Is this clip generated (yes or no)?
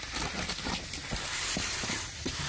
no